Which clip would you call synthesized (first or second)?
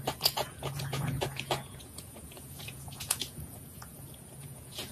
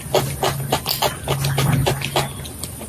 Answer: first